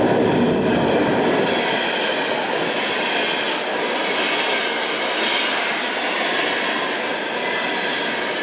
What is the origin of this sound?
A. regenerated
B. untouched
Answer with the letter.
B